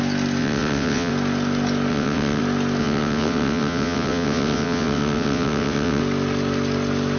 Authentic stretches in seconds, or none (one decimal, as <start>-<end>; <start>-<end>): 0.0-0.4; 1.1-1.9; 2.4-2.8; 6.0-7.2